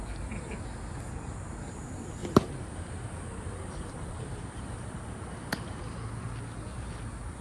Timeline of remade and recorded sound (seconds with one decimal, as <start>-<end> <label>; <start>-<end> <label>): 0.0-2.2 recorded; 2.2-5.8 remade; 5.8-7.4 recorded